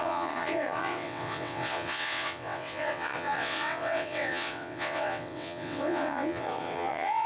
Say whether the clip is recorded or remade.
remade